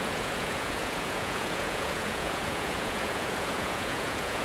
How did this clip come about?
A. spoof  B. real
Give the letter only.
A